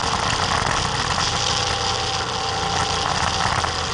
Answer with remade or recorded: recorded